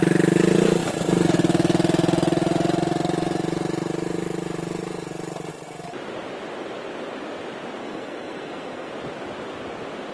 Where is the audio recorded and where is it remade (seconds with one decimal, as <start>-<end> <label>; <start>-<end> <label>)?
0.0-7.8 recorded; 7.8-8.9 remade; 8.9-10.1 recorded